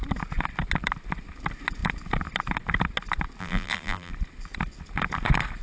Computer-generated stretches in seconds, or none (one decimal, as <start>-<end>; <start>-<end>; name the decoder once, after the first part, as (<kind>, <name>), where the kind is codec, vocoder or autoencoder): 3.4-4.1 (vocoder, BigVGAN v2)